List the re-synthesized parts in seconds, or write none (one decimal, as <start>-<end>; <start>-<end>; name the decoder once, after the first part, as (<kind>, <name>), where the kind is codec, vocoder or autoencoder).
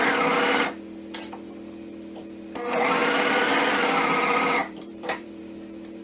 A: 3.0-3.8 (vocoder, BigVGAN v2); 4.6-5.4